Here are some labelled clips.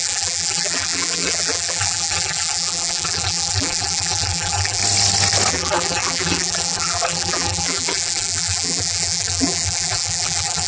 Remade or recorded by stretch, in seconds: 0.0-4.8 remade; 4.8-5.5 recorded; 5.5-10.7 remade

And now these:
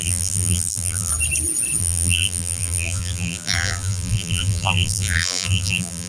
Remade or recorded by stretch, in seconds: 0.0-1.1 remade; 1.1-1.8 recorded; 1.8-6.1 remade

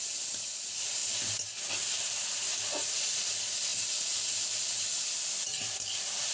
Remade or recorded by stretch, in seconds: 0.0-1.0 remade; 1.0-1.7 recorded; 1.7-6.3 remade

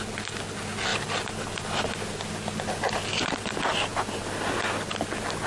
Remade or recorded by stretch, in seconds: 0.0-0.9 recorded; 0.9-3.7 remade; 3.7-5.5 recorded